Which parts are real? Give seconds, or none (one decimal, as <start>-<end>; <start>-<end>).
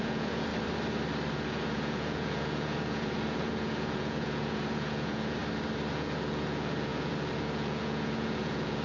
0.5-1.3; 5.4-5.9